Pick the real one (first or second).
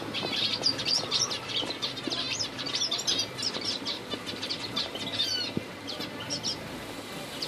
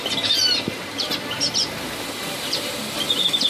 first